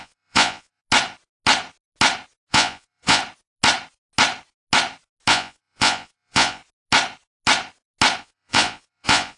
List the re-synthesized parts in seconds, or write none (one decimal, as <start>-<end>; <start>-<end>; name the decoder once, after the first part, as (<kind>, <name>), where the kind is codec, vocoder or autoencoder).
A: 0.0-0.8 (vocoder, Vocos); 2.5-3.2; 5.3-6.6; 8.2-9.4